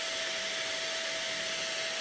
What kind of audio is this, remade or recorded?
recorded